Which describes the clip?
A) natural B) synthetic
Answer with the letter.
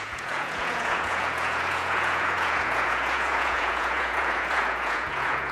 B